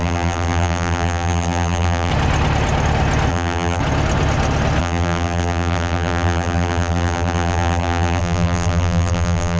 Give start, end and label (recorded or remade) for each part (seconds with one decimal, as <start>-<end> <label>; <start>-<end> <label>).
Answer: 0.0-2.1 remade; 2.1-3.3 recorded; 3.3-3.8 remade; 3.8-4.8 recorded; 4.8-9.6 remade